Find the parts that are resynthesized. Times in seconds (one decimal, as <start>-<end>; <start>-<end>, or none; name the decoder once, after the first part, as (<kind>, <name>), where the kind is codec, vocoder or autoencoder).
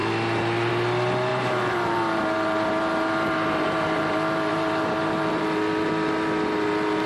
1.3-5.4 (vocoder, BigVGAN v2)